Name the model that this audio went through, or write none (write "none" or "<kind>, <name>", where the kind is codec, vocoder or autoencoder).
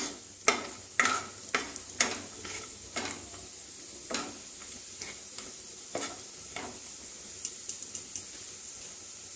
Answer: none